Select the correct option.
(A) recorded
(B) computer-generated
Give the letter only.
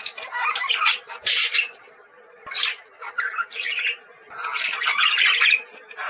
B